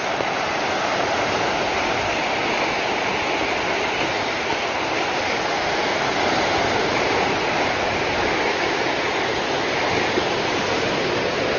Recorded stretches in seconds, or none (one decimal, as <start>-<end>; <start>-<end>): 0.0-11.6